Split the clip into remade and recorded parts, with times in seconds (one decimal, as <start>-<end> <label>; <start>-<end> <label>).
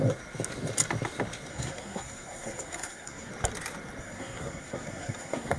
0.0-1.5 recorded; 1.5-3.3 remade; 3.3-4.0 recorded; 4.0-5.6 remade